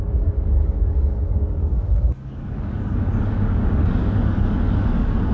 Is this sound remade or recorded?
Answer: remade